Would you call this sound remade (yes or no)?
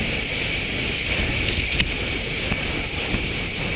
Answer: no